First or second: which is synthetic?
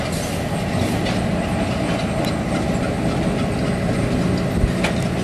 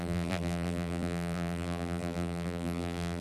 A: second